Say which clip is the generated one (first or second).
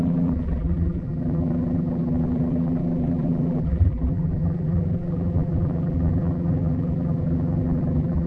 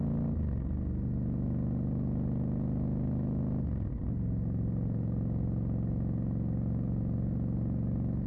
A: first